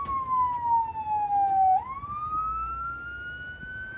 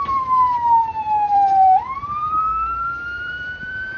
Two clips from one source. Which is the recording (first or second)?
first